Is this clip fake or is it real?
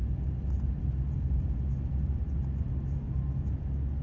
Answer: real